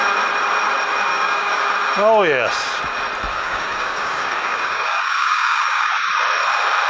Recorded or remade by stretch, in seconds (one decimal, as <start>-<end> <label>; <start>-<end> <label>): 0.0-1.1 recorded; 1.1-1.7 remade; 1.7-3.3 recorded; 3.3-6.2 remade; 6.2-6.9 recorded